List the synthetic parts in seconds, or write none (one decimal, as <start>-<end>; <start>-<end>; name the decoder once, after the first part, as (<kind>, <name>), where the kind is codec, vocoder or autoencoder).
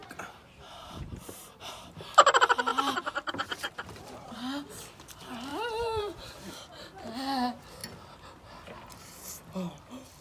0.0-1.7 (vocoder, BigVGAN v2); 2.7-4.7; 5.5-6.5